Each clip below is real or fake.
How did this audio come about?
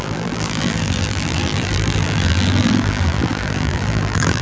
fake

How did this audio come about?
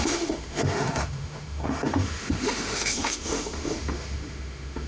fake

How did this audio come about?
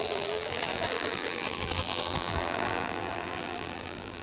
fake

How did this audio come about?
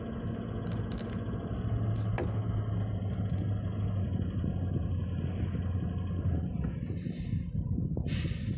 real